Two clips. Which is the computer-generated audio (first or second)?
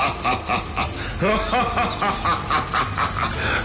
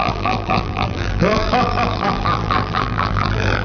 second